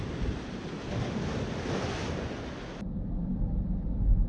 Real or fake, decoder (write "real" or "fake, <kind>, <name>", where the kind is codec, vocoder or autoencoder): real